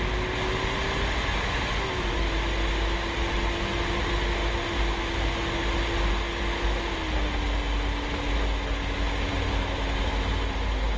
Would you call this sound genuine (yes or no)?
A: yes